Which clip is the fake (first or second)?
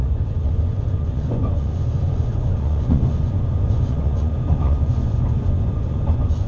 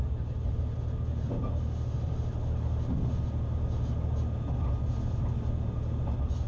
first